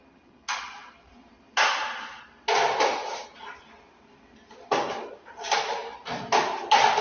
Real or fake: real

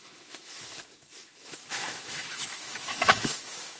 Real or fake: fake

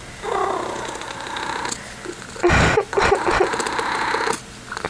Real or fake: real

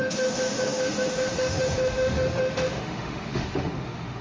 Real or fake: fake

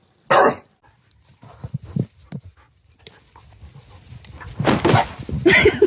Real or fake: real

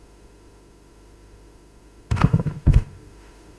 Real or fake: fake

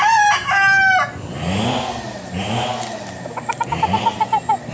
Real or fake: real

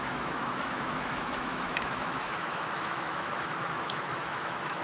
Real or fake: fake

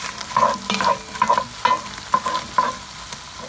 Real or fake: real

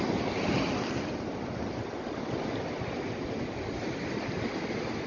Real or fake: real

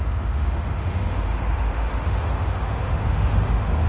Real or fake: fake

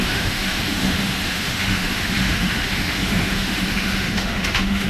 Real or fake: fake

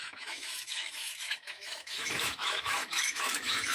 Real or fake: fake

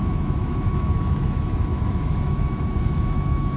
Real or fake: fake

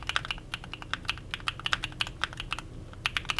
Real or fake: real